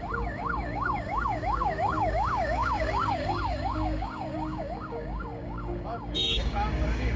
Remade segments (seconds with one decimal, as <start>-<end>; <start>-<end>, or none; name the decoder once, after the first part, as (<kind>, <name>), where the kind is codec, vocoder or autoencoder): 0.0-7.2 (codec, DAC)